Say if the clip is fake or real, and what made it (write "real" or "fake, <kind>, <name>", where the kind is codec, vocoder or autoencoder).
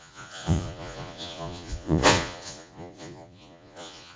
fake, vocoder, Vocos